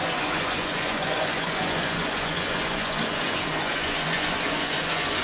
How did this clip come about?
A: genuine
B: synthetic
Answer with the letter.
B